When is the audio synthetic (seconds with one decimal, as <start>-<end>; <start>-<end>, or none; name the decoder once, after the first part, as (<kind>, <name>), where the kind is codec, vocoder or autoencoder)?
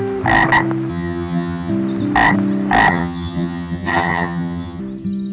0.9-1.7 (vocoder, HiFi-GAN); 2.9-4.8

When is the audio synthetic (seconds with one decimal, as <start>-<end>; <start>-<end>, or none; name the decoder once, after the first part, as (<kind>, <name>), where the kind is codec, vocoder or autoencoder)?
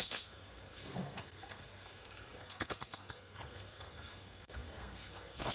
0.0-5.5 (codec, SNAC)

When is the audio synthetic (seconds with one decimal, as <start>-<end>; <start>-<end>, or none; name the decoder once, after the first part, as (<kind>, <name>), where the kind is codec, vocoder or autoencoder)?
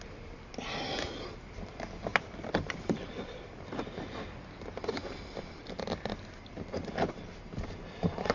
2.1-3.8 (vocoder, BigVGAN v2); 5.0-6.1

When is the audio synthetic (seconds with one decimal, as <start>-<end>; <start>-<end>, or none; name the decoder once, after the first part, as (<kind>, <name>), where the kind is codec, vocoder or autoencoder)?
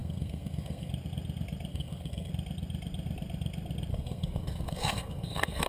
0.0-0.9 (codec, SNAC); 1.7-2.3; 3.9-5.7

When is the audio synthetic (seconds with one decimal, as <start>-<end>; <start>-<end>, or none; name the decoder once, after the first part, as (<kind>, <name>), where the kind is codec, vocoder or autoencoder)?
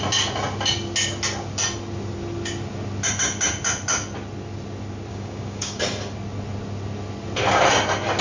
5.1-5.8 (codec, DAC)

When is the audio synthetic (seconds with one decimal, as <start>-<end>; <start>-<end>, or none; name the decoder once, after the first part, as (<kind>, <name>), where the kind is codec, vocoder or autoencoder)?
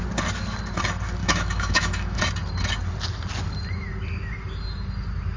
1.2-2.2 (autoencoder, DAC-VAE)